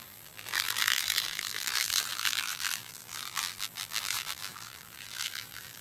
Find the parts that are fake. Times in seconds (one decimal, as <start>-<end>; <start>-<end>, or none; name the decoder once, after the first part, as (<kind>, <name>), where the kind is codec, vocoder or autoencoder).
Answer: 0.0-5.8 (vocoder, BigVGAN v2)